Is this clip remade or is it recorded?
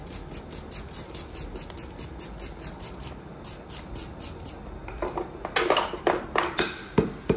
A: recorded